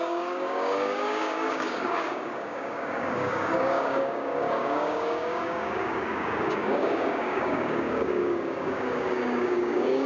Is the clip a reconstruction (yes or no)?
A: yes